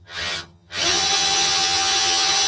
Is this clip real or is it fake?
fake